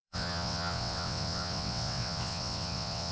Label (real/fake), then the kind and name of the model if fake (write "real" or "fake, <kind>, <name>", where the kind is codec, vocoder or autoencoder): fake, vocoder, WaveNeXt